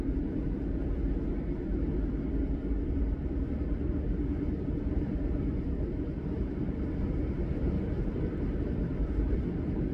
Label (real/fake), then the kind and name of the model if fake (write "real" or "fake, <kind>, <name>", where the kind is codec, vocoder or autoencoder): real